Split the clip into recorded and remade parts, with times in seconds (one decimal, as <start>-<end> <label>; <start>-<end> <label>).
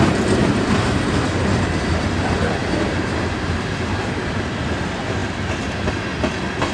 0.0-0.4 recorded; 0.4-1.2 remade; 1.2-2.6 recorded; 2.6-4.4 remade; 4.4-6.7 recorded